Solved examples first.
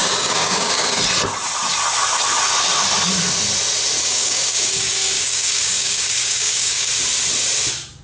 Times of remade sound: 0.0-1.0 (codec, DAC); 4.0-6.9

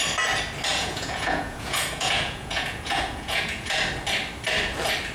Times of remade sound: 0.7-3.8 (vocoder, Vocos)

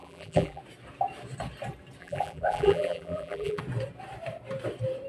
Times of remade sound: 0.0-0.6 (vocoder, BigVGAN v2); 2.0-3.6

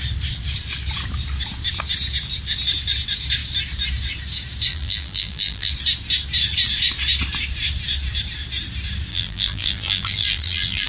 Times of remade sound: 4.7-5.7 (vocoder, BigVGAN v2); 9.1-10.9

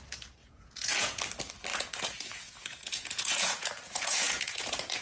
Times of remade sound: 0.4-1.2 (vocoder, Vocos); 1.7-5.0

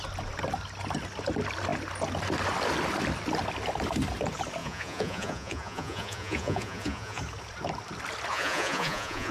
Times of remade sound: 4.6-7.2 (vocoder, Vocos); 8.3-9.3